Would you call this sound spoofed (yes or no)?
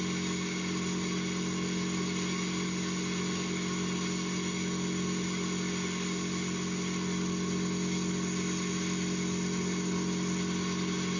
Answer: no